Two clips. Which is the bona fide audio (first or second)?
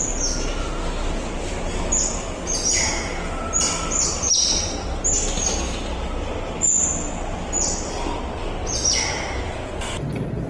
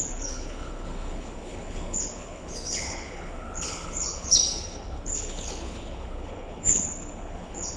first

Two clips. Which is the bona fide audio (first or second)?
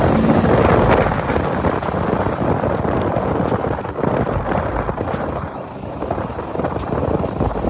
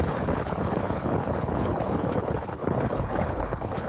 first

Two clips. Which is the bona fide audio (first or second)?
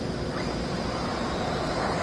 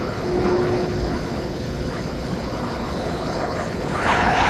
first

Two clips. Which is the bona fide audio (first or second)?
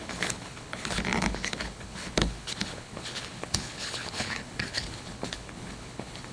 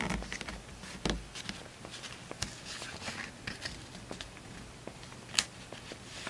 second